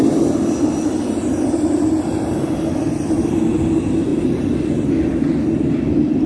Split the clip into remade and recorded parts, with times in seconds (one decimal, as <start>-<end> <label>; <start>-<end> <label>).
0.0-6.3 recorded